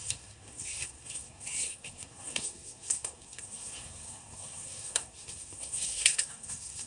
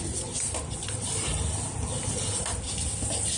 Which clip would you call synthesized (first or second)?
first